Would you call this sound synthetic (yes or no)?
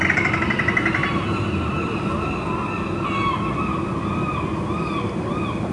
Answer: no